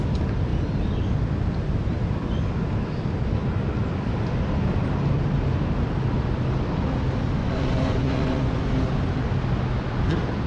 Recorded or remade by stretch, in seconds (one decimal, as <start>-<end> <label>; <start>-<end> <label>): 0.0-7.4 recorded; 7.4-8.6 remade; 8.6-10.5 recorded